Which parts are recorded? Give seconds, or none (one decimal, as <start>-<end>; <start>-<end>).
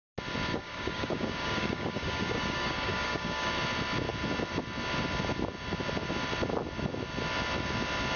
0.0-0.5; 3.5-8.2